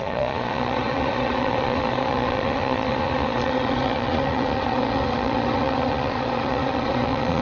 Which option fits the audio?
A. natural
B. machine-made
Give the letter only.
B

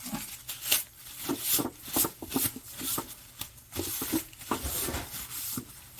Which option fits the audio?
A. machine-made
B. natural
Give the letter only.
B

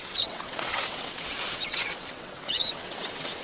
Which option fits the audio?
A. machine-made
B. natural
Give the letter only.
A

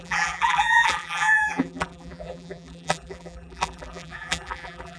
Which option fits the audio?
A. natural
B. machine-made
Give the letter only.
B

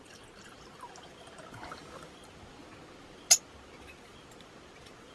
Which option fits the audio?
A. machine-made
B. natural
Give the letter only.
B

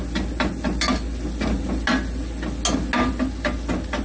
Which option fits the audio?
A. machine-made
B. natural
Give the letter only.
B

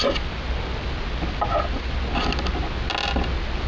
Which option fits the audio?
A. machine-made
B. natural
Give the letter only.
B